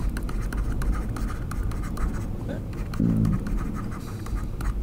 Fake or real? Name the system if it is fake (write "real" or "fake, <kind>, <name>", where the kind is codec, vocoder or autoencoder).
real